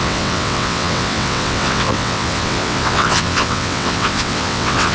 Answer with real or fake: fake